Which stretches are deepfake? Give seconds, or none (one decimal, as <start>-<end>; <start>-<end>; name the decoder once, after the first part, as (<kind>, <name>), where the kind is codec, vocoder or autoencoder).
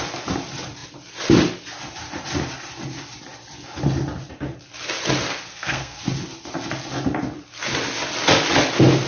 5.5-6.0 (codec, SNAC)